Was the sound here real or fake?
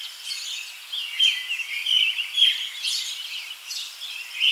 real